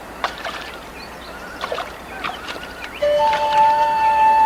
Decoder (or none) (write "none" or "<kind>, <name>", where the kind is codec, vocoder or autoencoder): vocoder, BigVGAN v2